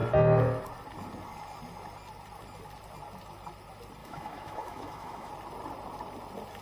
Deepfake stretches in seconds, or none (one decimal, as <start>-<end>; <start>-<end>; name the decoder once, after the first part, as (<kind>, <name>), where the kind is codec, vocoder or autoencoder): 4.0-5.3 (autoencoder, DAC-VAE)